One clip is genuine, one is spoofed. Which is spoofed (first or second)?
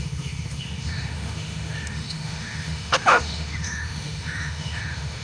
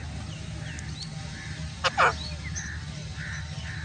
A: first